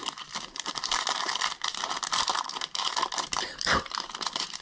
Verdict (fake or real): fake